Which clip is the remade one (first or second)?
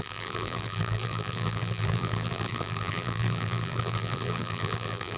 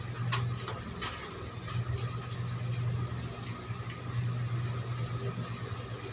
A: first